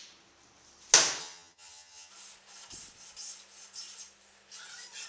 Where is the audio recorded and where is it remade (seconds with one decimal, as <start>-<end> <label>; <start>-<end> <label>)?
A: 0.0-1.2 recorded; 1.2-2.1 remade; 2.1-5.1 recorded